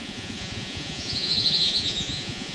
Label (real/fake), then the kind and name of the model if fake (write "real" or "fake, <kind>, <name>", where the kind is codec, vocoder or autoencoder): fake, vocoder, Vocos